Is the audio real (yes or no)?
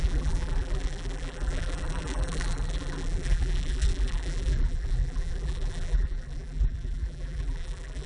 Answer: no